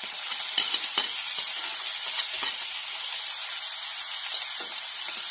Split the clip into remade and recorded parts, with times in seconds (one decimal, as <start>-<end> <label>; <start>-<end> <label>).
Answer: 0.0-5.3 recorded